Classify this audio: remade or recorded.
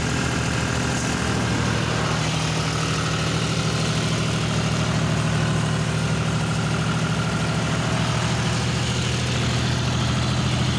recorded